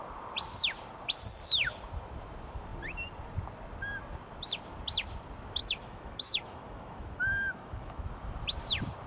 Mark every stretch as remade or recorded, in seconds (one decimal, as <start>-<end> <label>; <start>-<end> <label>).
0.0-5.6 recorded; 5.6-8.1 remade; 8.1-9.1 recorded